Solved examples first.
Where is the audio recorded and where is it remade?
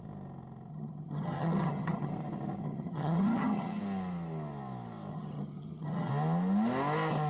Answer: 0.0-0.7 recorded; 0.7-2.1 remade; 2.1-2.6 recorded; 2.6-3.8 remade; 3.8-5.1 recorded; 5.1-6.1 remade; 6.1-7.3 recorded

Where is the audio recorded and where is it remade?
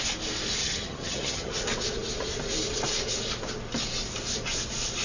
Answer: 0.0-0.6 recorded; 0.6-1.5 remade; 1.5-5.0 recorded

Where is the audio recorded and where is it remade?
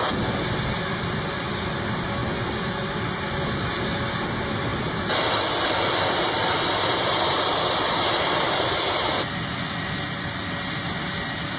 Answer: 0.0-11.6 recorded